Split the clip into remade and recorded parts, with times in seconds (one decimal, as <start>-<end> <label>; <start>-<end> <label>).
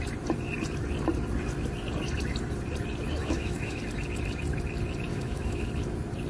0.0-3.2 recorded; 3.2-3.8 remade; 3.8-5.1 recorded; 5.1-5.7 remade; 5.7-6.3 recorded